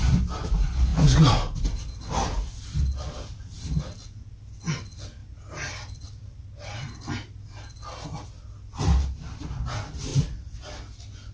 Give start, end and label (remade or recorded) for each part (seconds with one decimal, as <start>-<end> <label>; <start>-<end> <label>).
0.0-5.2 recorded; 5.2-7.9 remade; 7.9-10.1 recorded; 10.1-10.8 remade; 10.8-11.3 recorded